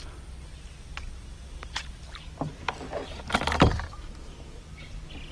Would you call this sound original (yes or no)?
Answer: yes